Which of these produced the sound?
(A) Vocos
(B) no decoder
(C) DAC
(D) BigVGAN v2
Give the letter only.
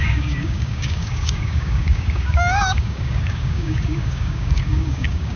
C